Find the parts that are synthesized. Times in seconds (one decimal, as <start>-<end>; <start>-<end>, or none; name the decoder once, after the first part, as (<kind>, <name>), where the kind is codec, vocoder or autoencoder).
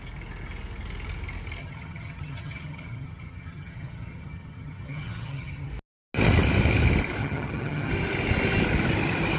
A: 1.6-5.7 (vocoder, HiFi-GAN); 7.2-7.9